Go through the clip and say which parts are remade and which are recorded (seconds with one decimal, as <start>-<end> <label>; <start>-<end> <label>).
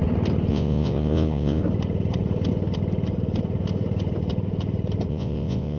0.0-0.5 recorded; 0.5-1.6 remade; 1.6-5.1 recorded; 5.1-5.8 remade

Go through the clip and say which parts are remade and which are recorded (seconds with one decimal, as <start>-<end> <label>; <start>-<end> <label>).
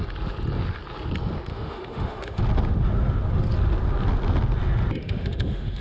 0.0-1.5 recorded; 1.5-2.4 remade; 2.4-5.0 recorded; 5.0-5.8 remade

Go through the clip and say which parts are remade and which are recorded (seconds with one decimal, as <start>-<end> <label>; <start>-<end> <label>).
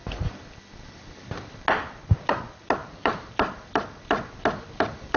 0.0-2.8 recorded; 2.8-3.3 remade; 3.3-5.2 recorded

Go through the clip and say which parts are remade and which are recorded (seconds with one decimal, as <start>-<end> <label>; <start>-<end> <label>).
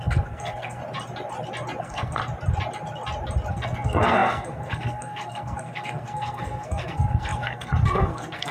0.0-0.8 remade; 0.8-1.8 recorded; 1.8-2.2 remade; 2.2-3.5 recorded; 3.5-8.5 remade